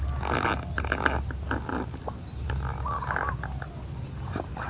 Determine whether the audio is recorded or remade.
recorded